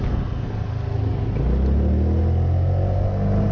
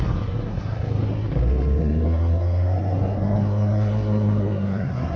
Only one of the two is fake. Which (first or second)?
second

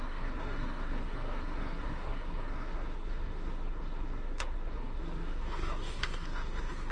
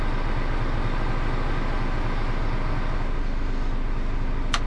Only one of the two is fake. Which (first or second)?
first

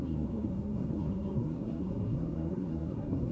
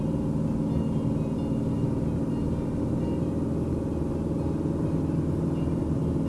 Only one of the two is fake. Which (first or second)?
first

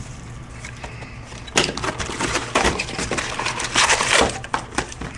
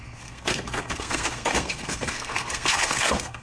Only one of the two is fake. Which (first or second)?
second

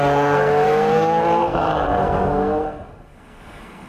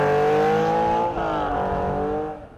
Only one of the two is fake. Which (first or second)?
first